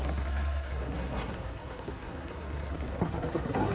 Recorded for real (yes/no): no